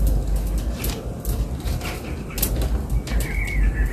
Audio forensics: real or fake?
real